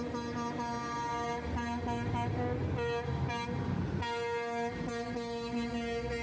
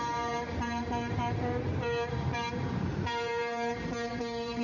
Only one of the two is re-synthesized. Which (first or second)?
second